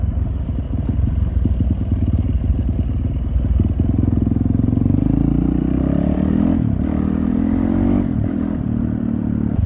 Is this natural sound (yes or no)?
yes